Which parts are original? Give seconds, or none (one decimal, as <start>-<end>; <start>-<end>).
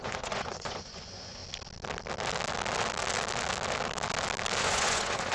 1.4-4.6